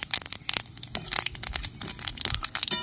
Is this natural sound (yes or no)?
yes